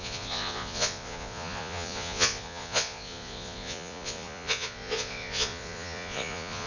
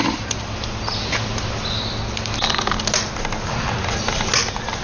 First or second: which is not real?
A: first